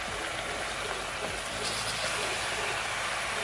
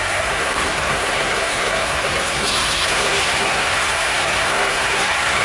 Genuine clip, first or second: first